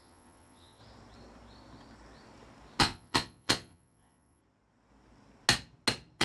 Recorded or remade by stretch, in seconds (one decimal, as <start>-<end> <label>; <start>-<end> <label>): 0.0-0.8 remade; 0.8-2.8 recorded; 2.8-4.4 remade; 4.4-6.2 recorded